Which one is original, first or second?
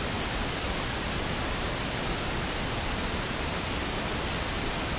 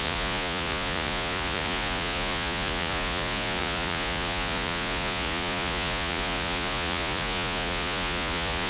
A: first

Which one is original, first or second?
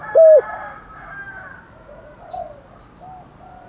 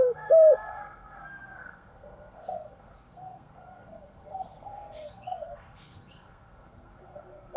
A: first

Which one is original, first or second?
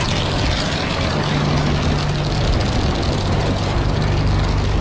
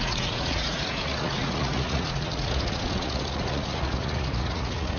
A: first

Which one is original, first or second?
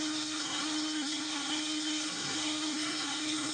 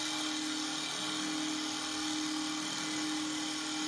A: second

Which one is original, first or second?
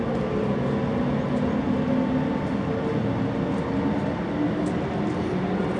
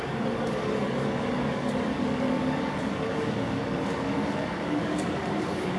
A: first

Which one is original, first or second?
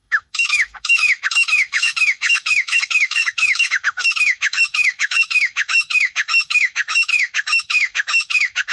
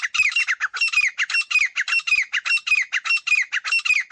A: second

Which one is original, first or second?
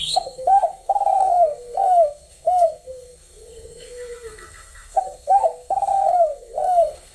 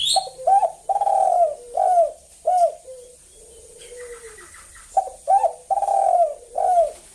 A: second